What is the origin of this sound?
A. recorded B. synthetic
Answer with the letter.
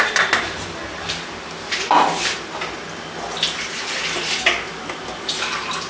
A